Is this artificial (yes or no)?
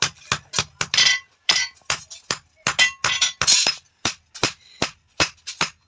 no